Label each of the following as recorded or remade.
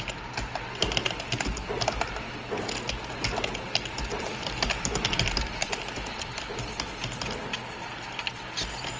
recorded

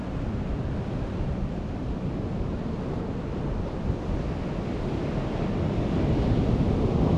recorded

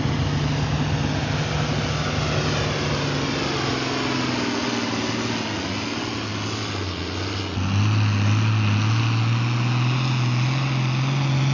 recorded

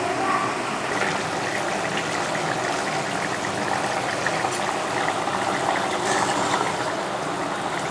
recorded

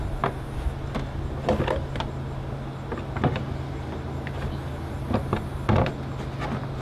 recorded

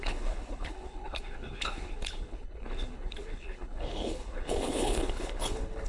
remade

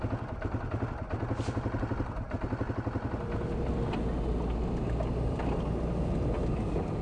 recorded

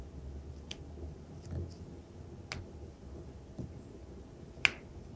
recorded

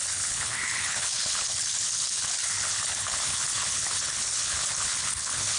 remade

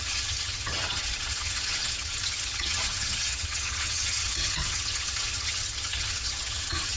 remade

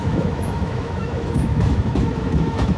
remade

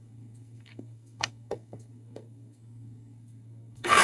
remade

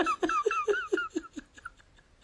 recorded